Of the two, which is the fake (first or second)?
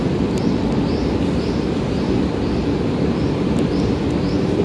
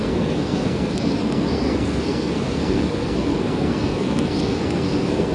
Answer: second